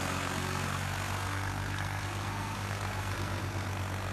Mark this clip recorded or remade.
remade